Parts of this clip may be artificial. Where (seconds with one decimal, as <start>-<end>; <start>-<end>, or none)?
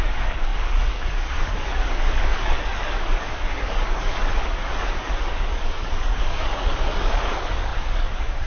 0.0-8.5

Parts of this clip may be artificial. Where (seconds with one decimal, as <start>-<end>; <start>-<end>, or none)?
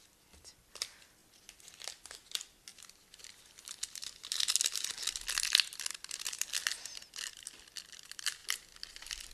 none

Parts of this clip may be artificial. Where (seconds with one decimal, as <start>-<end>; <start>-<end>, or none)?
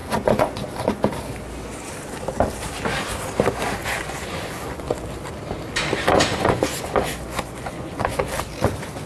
0.0-1.0; 3.8-5.0; 6.3-8.2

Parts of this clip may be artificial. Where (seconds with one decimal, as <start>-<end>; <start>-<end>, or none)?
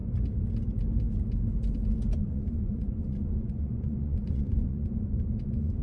2.2-5.8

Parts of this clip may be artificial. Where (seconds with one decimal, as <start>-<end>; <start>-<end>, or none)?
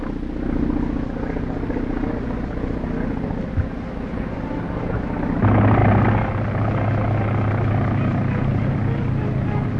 none